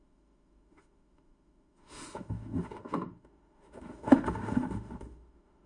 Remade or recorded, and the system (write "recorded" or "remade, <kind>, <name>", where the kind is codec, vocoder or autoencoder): remade, autoencoder, DAC-VAE